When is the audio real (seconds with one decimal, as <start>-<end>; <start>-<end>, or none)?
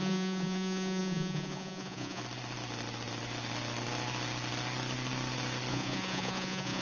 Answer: 2.2-5.7